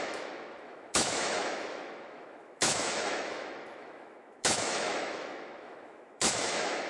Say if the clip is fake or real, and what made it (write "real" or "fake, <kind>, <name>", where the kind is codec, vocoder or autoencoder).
fake, autoencoder, DAC-VAE